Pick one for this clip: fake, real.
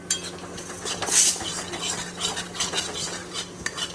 real